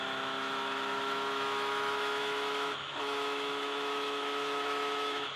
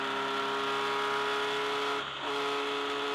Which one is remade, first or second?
first